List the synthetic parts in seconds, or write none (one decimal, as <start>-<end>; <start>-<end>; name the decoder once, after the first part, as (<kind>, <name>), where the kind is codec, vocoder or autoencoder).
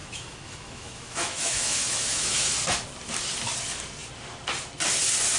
0.0-2.5 (autoencoder, DAC-VAE)